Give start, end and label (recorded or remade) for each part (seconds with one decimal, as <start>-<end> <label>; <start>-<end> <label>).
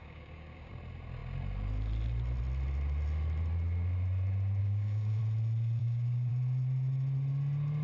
0.0-0.7 remade; 0.7-4.6 recorded; 4.6-5.2 remade; 5.2-5.8 recorded; 5.8-6.3 remade; 6.3-7.8 recorded